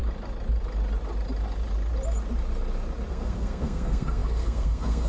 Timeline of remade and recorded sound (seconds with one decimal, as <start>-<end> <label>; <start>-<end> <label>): 0.0-3.1 recorded; 3.1-5.1 remade